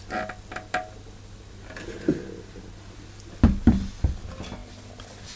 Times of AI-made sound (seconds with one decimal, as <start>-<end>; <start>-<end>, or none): none